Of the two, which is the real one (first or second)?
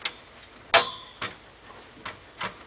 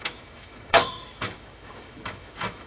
first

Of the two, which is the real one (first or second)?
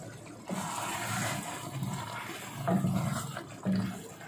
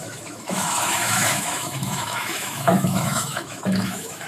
first